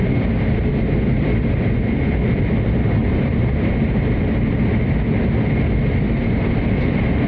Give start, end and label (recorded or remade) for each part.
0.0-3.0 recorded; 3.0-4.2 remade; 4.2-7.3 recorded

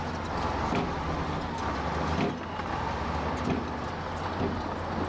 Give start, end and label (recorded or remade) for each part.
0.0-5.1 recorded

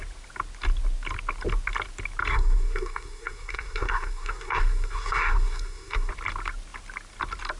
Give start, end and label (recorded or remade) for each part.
0.0-2.3 recorded; 2.3-6.1 remade; 6.1-7.6 recorded

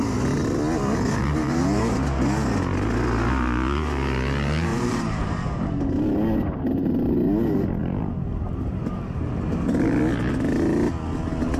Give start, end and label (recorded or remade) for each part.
0.0-1.2 recorded; 1.2-1.8 remade; 1.8-4.7 recorded; 4.7-5.8 remade; 5.8-7.8 recorded; 7.8-9.3 remade; 9.3-11.6 recorded